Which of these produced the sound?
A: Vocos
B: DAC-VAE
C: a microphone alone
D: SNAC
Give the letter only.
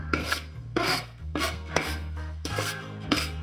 D